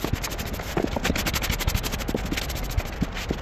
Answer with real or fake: real